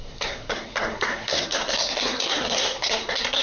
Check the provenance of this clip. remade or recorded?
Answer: remade